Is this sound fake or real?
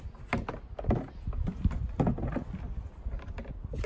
real